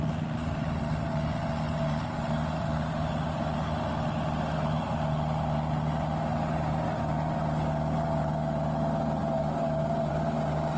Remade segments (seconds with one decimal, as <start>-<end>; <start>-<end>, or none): none